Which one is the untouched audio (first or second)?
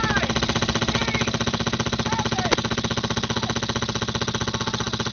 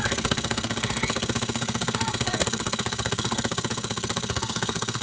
first